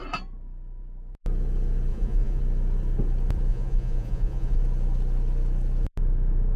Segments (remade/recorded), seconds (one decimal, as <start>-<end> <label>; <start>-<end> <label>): 0.0-1.9 recorded; 1.9-2.4 remade; 2.4-3.5 recorded; 3.5-4.6 remade; 4.6-6.6 recorded